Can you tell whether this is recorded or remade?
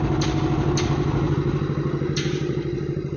recorded